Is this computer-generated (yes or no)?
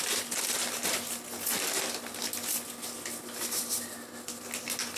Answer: no